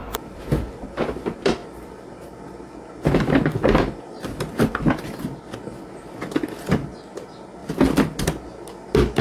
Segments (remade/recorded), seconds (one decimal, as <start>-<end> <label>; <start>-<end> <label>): 0.0-9.2 recorded